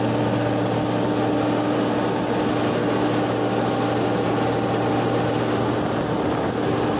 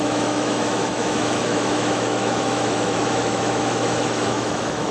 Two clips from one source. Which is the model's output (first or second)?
second